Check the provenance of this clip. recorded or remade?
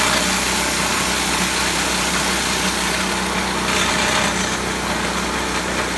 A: recorded